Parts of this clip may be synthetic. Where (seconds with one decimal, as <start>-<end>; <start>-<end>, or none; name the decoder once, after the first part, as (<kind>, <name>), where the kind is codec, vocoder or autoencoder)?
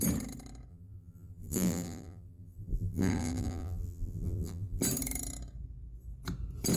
0.7-4.8 (vocoder, BigVGAN v2)